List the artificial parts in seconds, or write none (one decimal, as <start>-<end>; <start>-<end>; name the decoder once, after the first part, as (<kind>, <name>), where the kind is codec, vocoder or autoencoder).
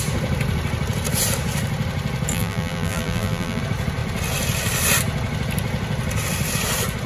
2.3-3.6 (vocoder, BigVGAN v2)